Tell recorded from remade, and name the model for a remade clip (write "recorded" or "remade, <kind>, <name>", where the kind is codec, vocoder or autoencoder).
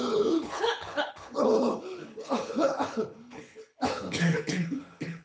remade, codec, HILCodec